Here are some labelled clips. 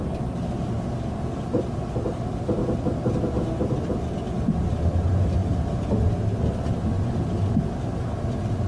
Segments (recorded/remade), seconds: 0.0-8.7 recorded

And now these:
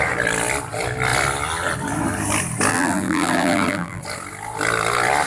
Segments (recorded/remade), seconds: 0.0-2.7 recorded; 2.7-4.0 remade; 4.0-5.3 recorded

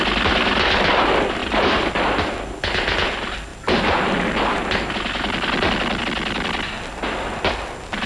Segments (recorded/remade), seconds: 0.0-1.4 recorded; 1.4-1.9 remade; 1.9-8.1 recorded

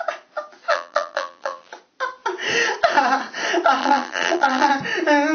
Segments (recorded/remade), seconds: 0.0-0.7 recorded; 0.7-1.7 remade; 1.7-3.8 recorded; 3.8-4.7 remade; 4.7-5.3 recorded